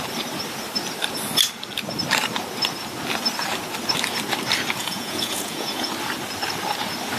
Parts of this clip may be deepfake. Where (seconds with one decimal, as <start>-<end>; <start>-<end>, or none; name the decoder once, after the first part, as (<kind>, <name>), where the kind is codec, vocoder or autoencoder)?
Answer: 4.8-5.9 (vocoder, Vocos)